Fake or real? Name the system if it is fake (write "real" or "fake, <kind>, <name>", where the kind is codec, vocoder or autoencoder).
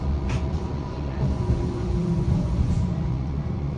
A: fake, vocoder, Vocos